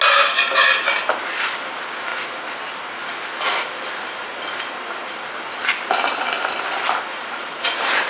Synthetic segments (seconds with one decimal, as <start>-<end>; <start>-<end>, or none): none